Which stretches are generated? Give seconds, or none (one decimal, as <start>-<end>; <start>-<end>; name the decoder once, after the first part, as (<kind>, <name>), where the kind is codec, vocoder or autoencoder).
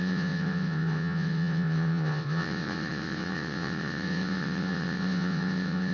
0.0-5.9 (vocoder, WaveNeXt)